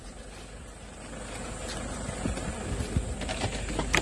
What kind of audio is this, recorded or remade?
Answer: recorded